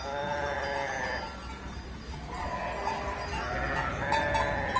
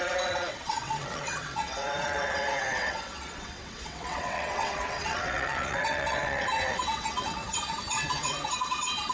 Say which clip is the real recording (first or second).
first